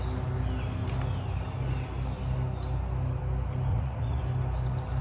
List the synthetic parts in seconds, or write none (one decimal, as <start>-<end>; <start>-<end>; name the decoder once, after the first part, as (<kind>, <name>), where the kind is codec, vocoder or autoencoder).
3.7-4.2 (vocoder, Vocos)